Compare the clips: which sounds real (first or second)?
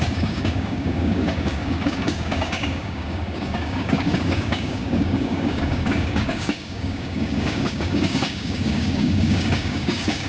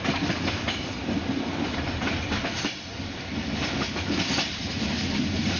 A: second